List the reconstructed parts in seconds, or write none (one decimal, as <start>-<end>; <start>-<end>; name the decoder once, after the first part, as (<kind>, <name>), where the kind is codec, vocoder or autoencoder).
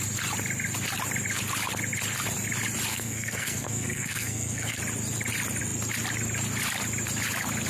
2.9-4.8 (codec, SNAC)